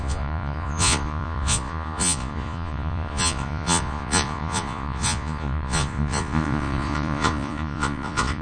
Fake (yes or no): yes